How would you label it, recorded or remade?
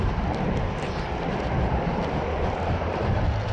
remade